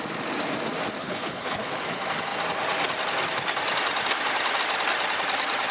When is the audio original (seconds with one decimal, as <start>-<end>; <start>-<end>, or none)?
0.0-1.0; 1.7-5.7